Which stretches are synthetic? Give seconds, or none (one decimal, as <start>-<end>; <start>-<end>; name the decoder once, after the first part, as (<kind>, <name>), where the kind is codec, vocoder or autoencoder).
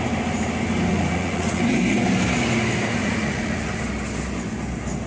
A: 0.9-1.6 (vocoder, Vocos); 3.0-3.8